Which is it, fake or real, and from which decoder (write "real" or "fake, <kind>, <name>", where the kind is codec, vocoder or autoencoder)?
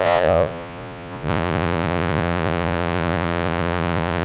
fake, vocoder, Vocos